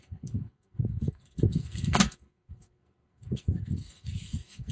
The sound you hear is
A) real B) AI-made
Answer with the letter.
B